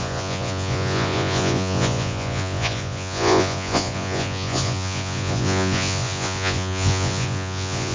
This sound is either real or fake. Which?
fake